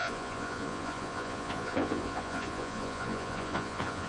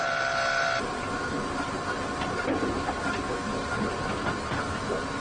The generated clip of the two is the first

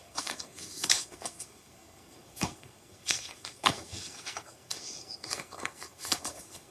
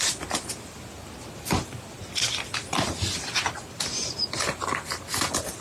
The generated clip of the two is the first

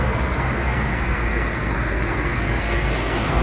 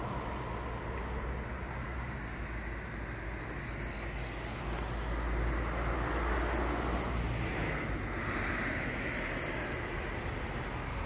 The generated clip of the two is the first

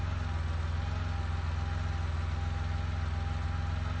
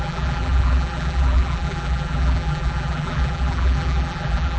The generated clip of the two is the second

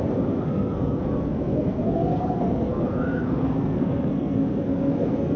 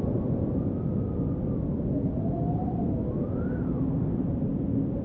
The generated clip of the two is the first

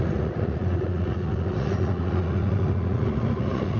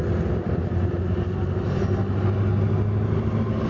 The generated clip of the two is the first